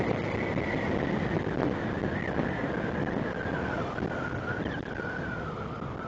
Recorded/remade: recorded